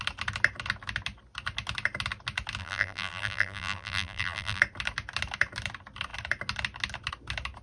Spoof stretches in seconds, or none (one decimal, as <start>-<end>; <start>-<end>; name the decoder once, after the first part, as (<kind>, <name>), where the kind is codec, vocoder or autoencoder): 2.6-4.6 (vocoder, BigVGAN v2)